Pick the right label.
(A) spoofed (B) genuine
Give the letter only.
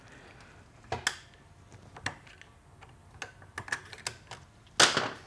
B